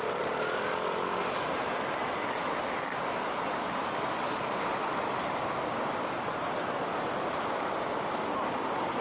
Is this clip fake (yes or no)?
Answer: no